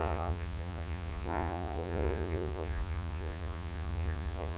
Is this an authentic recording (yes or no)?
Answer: no